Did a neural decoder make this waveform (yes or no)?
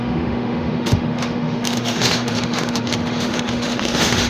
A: yes